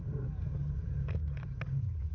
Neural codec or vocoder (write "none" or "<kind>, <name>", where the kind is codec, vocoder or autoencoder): vocoder, BigVGAN v2